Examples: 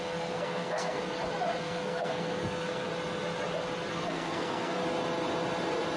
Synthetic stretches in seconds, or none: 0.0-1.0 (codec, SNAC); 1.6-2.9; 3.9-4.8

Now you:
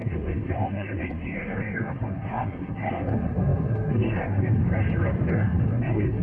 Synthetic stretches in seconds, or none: 0.0-4.6 (codec, SNAC); 5.3-6.2

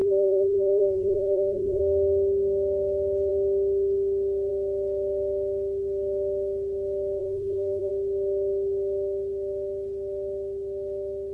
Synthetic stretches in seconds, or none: 0.0-1.8 (codec, SNAC); 7.2-7.9

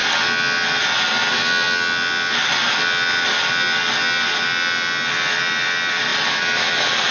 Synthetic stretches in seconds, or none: none